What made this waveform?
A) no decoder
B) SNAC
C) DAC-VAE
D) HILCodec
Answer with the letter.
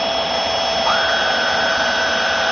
A